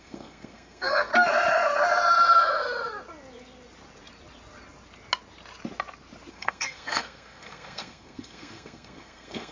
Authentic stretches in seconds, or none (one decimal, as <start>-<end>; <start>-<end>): 1.1-6.3